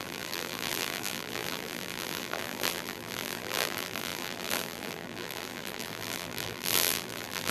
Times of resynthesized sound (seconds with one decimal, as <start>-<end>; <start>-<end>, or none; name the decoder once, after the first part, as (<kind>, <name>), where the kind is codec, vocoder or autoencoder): 0.0-7.5 (vocoder, BigVGAN v2)